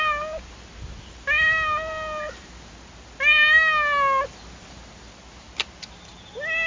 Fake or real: real